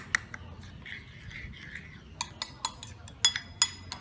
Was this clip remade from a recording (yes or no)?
no